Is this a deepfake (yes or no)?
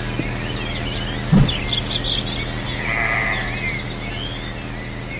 no